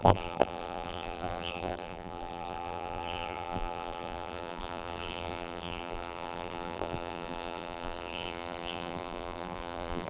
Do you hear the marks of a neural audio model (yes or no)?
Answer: yes